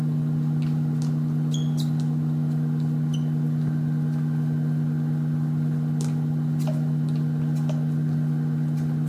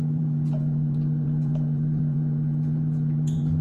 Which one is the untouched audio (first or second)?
first